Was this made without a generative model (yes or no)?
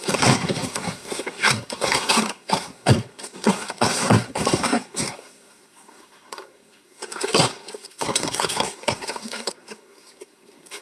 no